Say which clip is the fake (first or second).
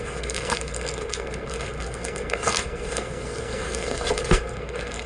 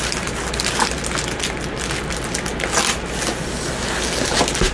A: first